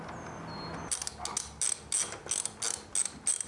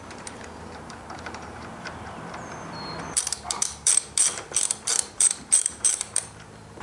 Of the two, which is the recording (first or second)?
first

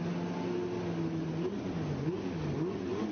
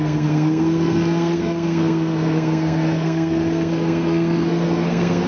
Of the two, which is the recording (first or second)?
first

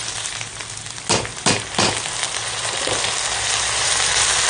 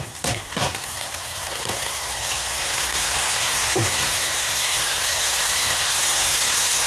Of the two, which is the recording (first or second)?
first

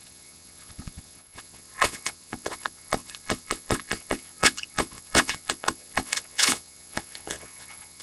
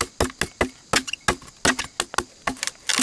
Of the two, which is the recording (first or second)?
second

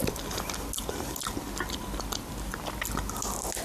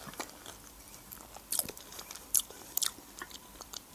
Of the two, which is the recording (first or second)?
first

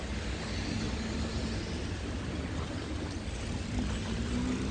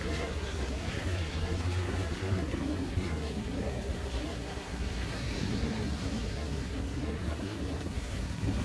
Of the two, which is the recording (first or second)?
first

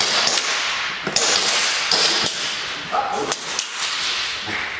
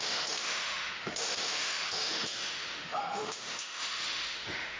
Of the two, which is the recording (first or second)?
first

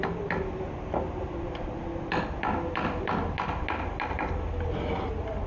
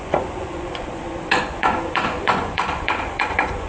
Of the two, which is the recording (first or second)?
first